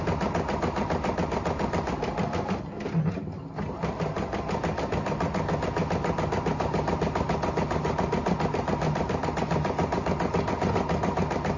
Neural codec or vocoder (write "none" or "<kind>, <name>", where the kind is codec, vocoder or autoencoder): none